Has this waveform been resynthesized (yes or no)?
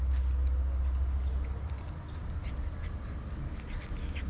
no